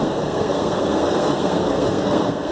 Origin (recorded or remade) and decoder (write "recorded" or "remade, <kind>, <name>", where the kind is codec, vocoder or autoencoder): remade, codec, SNAC